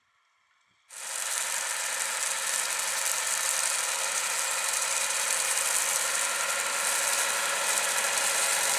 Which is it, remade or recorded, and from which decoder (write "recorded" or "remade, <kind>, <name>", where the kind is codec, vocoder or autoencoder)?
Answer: recorded